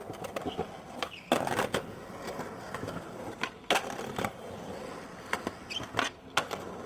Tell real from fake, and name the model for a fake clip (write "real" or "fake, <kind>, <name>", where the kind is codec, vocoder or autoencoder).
real